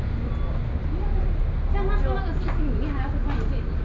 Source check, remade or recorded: recorded